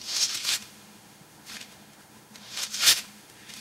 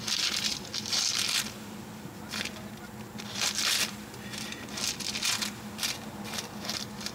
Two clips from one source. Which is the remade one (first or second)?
first